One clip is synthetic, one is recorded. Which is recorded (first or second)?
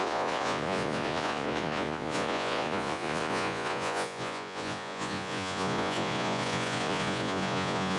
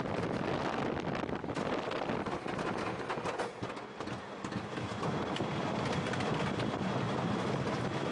second